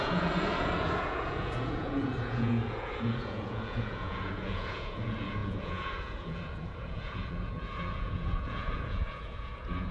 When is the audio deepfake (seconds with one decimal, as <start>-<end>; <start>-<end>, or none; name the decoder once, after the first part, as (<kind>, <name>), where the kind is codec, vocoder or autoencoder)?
0.0-9.9 (vocoder, Vocos)